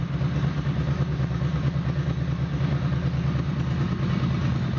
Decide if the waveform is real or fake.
real